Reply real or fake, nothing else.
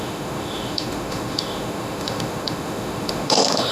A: fake